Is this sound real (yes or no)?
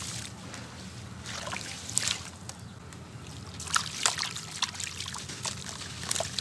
yes